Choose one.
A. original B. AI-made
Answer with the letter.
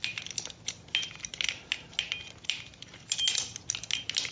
A